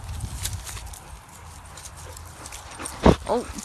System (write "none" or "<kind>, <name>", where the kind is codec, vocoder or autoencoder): none